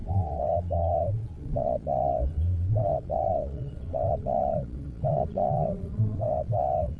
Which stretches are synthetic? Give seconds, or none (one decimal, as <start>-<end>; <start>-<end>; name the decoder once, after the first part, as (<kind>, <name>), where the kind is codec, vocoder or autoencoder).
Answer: 0.0-7.0 (vocoder, Vocos)